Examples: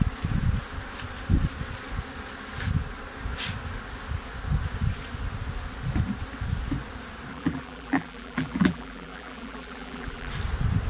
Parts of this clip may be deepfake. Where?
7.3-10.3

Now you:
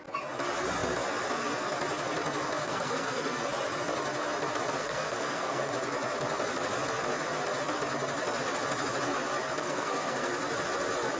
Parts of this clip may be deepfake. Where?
2.6-3.4; 4.8-5.7; 9.6-10.3

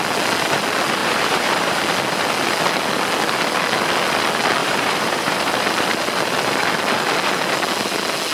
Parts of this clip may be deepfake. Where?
1.0-1.8; 4.6-5.5

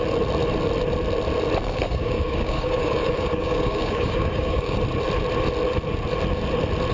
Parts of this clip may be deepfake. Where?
1.6-4.8

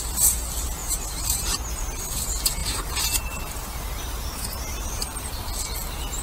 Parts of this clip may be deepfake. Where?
0.8-1.8; 2.6-5.5

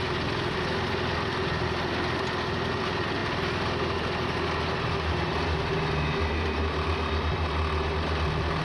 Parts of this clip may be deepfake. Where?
none